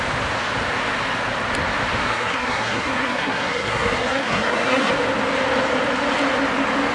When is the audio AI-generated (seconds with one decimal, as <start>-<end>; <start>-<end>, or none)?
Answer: 2.0-4.9